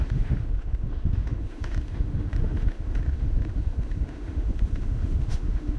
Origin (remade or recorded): remade